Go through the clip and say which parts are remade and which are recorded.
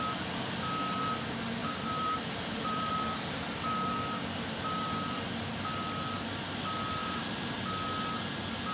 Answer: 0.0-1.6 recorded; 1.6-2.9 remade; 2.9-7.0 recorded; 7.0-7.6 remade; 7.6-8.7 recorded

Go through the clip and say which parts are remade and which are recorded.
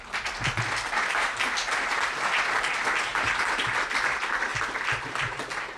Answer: 0.0-3.1 recorded; 3.1-3.6 remade; 3.6-5.8 recorded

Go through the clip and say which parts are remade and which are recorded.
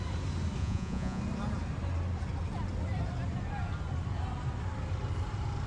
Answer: 0.0-0.6 recorded; 0.6-1.2 remade; 1.2-5.7 recorded